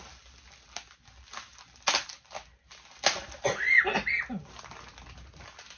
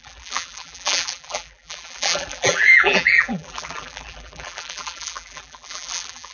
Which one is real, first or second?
first